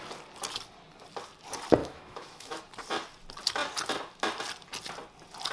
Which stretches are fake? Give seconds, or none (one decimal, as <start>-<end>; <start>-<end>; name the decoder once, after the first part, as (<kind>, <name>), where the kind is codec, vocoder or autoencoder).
1.8-2.6 (autoencoder, DAC-VAE)